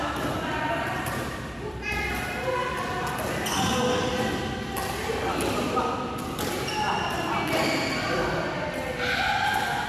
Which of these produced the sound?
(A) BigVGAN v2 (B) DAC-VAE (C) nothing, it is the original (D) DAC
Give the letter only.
C